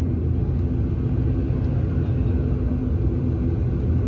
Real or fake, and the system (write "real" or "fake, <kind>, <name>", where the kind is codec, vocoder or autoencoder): real